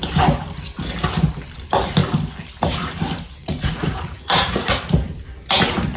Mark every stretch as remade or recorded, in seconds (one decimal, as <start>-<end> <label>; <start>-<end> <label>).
0.0-3.4 recorded; 3.4-4.8 remade; 4.8-6.0 recorded